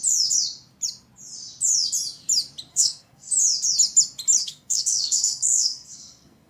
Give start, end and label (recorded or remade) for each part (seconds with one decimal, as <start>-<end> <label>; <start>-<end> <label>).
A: 0.0-2.7 recorded; 2.7-3.3 remade; 3.3-4.4 recorded; 4.4-6.5 remade